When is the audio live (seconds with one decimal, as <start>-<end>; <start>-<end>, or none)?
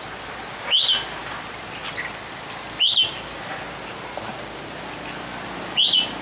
0.0-6.2